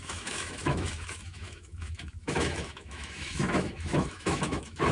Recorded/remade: remade